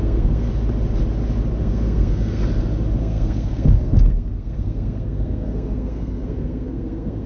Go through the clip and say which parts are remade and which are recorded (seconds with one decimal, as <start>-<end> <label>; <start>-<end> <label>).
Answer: 0.0-0.5 remade; 0.5-1.6 recorded; 1.6-2.4 remade; 2.4-3.0 recorded; 3.0-7.3 remade